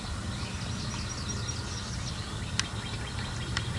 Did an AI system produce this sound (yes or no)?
no